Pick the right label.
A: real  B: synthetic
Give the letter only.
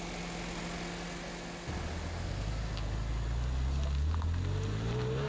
A